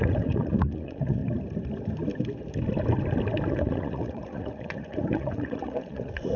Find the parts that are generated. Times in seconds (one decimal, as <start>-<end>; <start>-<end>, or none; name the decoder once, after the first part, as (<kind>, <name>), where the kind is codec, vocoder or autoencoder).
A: 0.0-1.2 (vocoder, Vocos); 3.5-6.4